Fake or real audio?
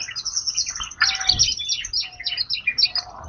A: real